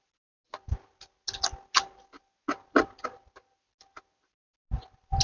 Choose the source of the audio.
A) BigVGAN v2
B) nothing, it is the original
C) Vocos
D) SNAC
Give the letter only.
B